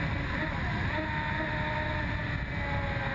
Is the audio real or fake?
real